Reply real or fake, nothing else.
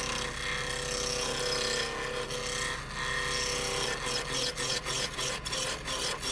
real